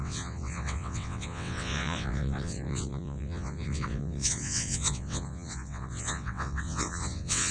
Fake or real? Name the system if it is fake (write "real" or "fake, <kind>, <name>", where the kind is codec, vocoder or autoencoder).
fake, vocoder, WaveNeXt